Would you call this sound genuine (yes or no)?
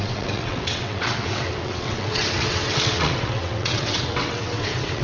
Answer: no